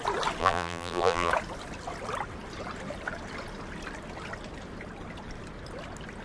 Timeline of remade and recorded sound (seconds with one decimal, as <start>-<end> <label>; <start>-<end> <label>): 0.0-0.4 recorded; 0.4-1.3 remade; 1.3-6.2 recorded